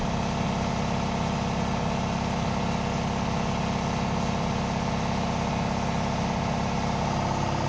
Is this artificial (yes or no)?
no